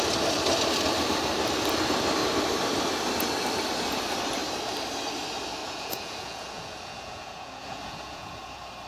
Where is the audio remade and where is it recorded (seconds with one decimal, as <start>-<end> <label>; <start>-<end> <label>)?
0.0-5.6 recorded; 5.6-8.5 remade; 8.5-8.9 recorded